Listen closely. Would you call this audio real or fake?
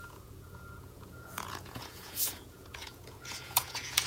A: fake